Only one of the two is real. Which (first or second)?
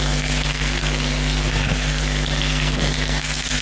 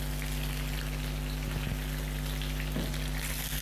second